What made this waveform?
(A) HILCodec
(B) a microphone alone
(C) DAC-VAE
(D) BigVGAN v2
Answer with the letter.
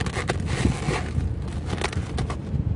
B